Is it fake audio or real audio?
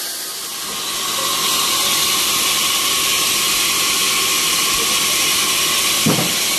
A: real